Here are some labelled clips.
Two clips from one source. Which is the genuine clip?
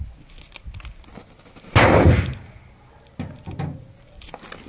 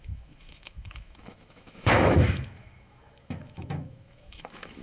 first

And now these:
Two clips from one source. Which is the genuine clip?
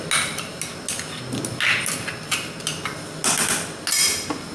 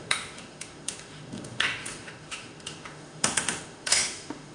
first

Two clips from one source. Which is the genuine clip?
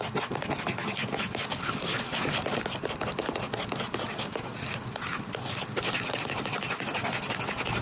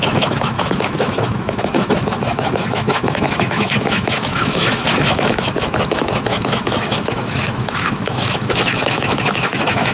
first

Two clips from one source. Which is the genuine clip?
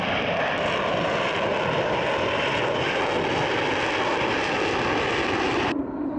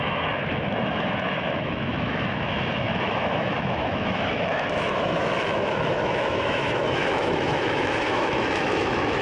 first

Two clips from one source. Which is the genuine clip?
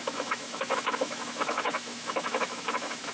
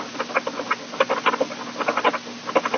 second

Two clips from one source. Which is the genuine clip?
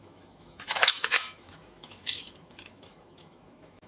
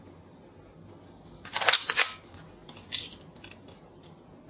second